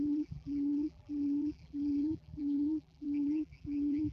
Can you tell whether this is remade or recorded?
remade